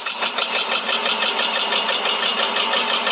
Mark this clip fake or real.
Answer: real